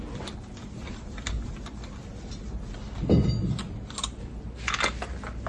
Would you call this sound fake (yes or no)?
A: no